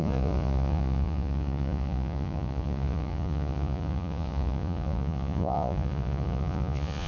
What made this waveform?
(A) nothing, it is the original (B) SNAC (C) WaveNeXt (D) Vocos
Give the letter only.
D